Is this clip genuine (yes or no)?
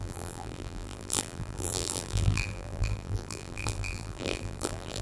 no